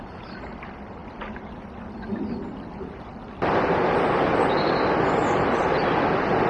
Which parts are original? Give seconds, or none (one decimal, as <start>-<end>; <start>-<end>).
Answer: 0.0-6.5